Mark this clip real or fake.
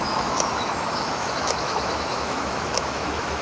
fake